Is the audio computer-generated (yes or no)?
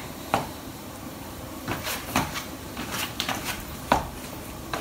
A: yes